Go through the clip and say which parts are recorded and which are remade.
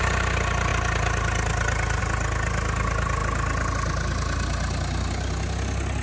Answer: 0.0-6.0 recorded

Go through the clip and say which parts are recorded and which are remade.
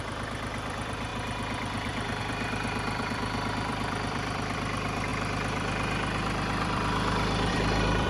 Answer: 0.0-8.1 remade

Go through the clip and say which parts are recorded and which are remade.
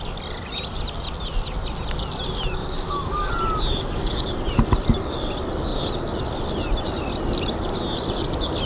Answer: 0.0-2.6 recorded; 2.6-3.3 remade; 3.3-3.7 recorded; 3.7-4.3 remade; 4.3-8.7 recorded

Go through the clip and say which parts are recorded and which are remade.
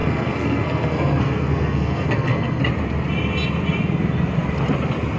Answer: 0.0-2.6 remade; 2.6-5.2 recorded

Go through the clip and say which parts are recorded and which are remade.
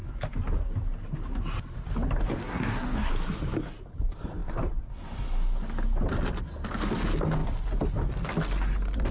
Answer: 0.0-2.4 recorded; 2.4-3.1 remade; 3.1-9.1 recorded